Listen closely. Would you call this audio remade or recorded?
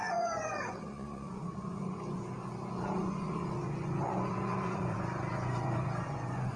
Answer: remade